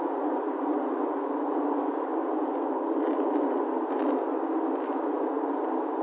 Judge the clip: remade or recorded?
recorded